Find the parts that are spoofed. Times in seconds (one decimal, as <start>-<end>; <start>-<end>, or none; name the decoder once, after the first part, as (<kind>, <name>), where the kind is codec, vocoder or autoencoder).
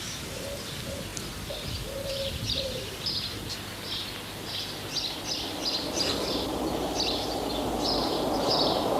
none